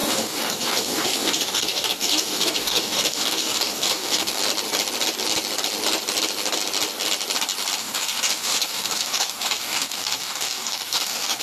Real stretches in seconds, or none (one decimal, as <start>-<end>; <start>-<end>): 4.4-7.8